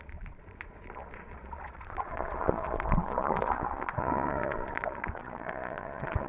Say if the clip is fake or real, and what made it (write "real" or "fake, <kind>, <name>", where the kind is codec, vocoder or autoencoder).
fake, vocoder, Vocos